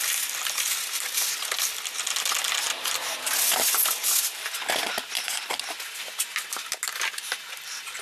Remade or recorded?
recorded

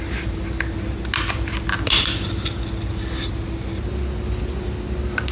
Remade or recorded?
recorded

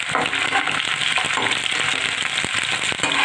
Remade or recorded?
recorded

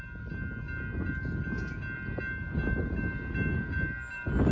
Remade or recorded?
recorded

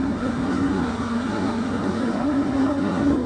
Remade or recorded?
remade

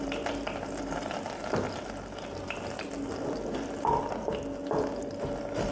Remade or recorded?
recorded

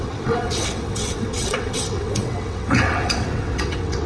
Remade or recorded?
remade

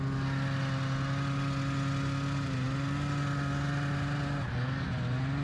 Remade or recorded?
recorded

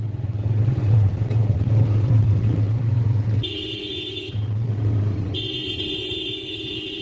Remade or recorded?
remade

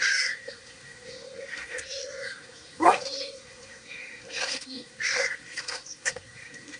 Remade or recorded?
remade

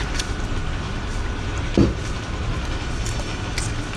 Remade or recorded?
recorded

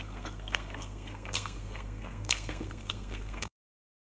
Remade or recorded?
remade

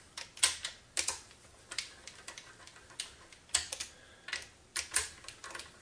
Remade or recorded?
recorded